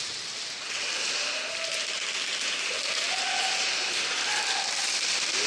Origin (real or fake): real